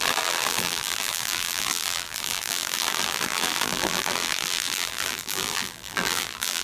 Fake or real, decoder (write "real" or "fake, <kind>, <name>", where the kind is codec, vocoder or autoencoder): fake, vocoder, BigVGAN v2